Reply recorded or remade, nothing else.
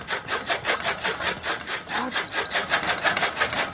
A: recorded